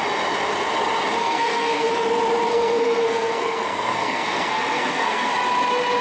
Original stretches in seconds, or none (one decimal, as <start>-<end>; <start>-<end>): 0.0-1.2; 1.9-2.5; 5.3-6.0